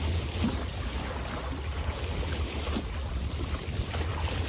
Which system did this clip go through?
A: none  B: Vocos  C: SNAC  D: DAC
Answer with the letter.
A